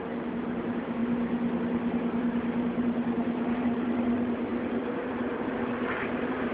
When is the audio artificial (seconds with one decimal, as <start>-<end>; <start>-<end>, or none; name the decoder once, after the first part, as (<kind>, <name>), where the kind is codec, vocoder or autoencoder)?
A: none